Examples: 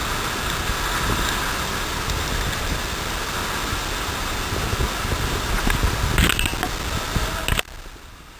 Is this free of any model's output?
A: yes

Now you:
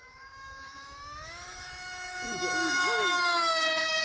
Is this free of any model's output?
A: no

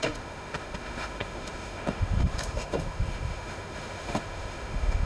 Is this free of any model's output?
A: no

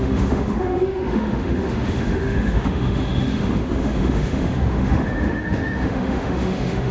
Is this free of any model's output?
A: no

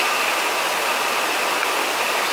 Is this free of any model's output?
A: yes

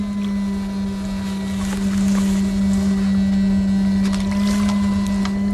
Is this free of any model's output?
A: yes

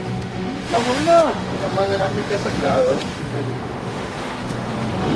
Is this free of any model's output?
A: no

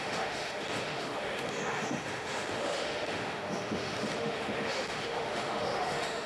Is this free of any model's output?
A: no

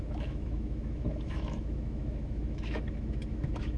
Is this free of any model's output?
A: no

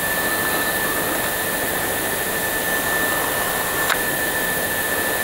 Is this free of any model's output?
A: yes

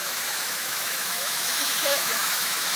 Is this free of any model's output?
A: no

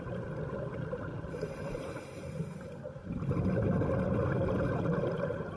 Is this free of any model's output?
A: yes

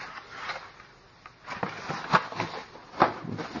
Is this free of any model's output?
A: yes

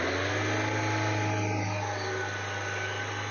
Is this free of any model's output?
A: yes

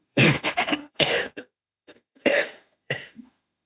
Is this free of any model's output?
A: no